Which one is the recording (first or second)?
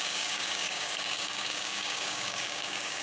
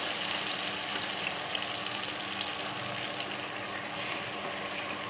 second